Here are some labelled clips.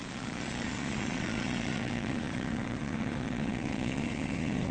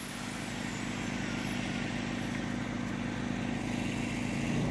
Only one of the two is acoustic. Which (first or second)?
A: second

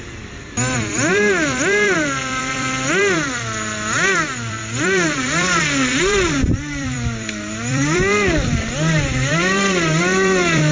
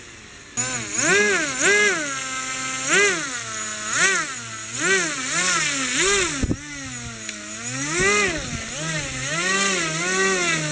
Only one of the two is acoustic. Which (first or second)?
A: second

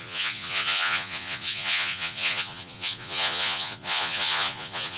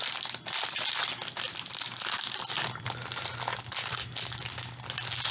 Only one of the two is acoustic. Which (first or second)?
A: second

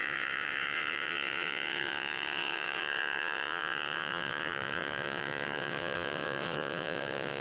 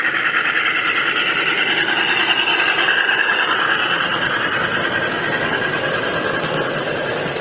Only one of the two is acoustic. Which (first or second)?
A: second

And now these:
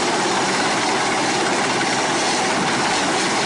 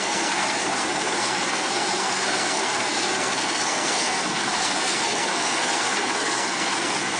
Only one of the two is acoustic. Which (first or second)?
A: first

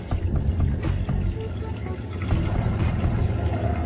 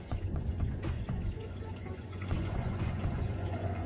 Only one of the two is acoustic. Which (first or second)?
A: first